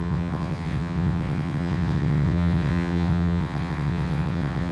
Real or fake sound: fake